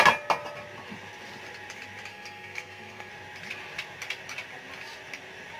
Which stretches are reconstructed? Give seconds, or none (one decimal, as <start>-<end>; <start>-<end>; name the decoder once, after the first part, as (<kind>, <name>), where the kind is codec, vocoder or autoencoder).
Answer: 2.1-3.1 (codec, SNAC)